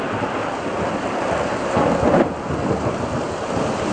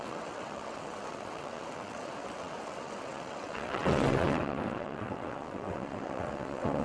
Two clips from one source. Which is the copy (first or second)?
second